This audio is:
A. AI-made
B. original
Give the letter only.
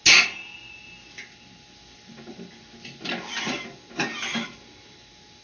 B